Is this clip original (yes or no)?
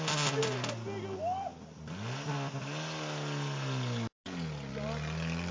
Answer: yes